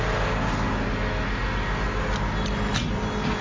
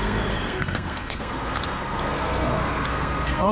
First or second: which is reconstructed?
second